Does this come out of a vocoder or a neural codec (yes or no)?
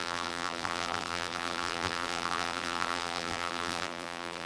yes